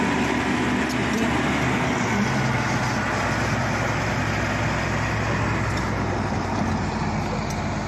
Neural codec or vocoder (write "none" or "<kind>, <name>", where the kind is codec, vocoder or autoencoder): none